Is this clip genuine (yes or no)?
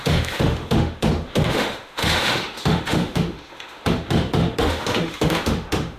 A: no